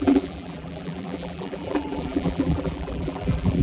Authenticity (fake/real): fake